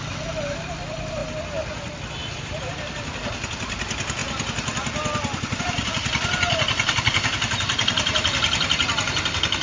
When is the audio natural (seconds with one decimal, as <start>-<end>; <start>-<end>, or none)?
1.2-2.6; 4.2-5.6